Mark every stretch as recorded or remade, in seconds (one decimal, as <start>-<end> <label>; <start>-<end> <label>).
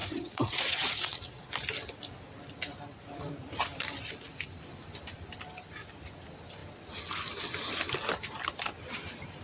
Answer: 0.0-1.5 remade; 1.5-9.4 recorded